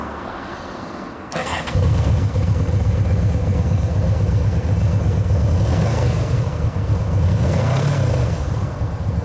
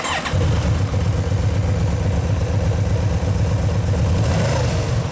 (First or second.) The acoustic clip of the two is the second